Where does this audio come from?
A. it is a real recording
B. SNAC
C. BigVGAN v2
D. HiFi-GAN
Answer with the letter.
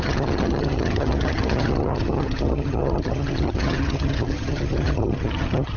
D